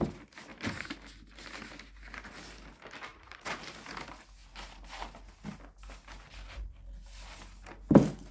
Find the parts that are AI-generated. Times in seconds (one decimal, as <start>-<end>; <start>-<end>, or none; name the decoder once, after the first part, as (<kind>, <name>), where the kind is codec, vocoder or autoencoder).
3.1-3.6 (vocoder, Vocos)